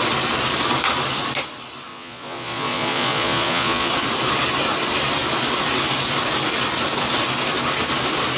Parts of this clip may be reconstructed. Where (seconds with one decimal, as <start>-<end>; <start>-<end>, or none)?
1.9-3.9